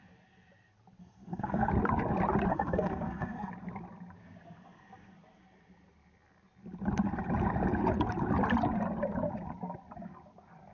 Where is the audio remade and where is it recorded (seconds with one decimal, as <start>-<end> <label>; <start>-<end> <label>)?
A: 0.0-1.0 recorded; 1.0-1.7 remade; 1.7-2.5 recorded; 2.5-3.5 remade; 3.5-10.7 recorded